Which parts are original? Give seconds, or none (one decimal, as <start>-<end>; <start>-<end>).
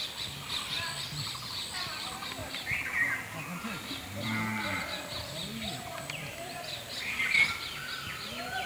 0.0-8.7